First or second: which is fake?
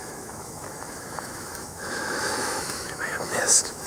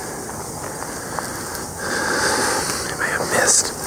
first